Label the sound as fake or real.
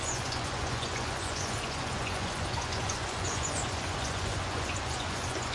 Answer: fake